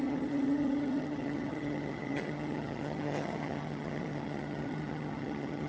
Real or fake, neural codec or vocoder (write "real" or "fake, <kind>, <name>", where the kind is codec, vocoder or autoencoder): fake, vocoder, HiFi-GAN